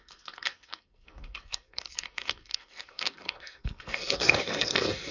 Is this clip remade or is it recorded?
remade